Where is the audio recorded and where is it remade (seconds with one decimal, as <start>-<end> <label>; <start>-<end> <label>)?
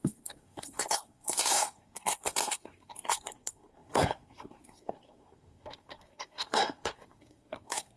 0.0-8.0 remade